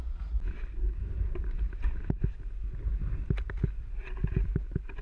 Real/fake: real